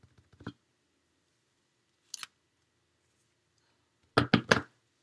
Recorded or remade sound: recorded